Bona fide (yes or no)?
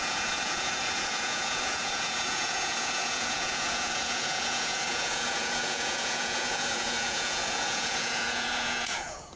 no